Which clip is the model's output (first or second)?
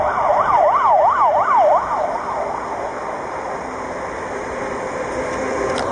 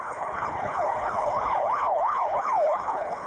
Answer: second